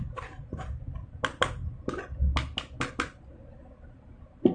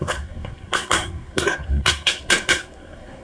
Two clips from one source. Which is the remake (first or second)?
second